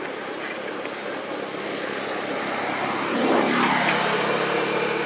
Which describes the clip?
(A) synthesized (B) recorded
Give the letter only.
B